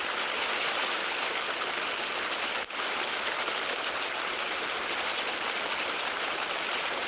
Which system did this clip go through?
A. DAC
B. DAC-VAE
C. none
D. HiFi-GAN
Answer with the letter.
C